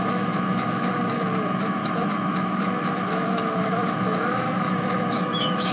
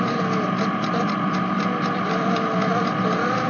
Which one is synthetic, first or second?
first